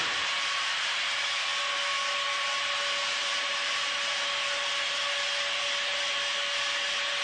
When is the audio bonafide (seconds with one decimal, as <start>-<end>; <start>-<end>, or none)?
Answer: 0.0-7.2